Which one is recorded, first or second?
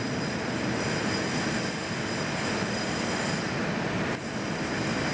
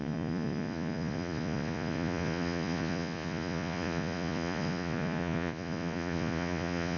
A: first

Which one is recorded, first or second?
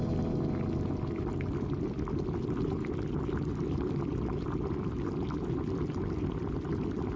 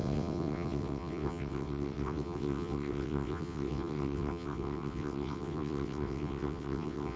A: first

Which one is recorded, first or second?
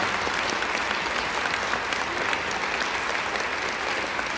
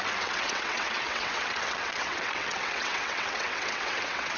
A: first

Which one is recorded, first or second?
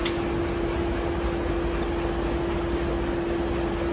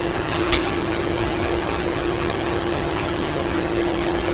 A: first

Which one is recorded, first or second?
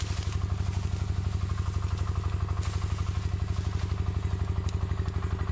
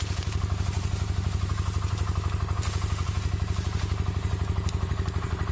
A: first